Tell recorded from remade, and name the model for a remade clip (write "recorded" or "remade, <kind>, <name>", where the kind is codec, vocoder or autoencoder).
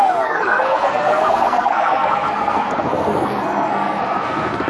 remade, codec, SNAC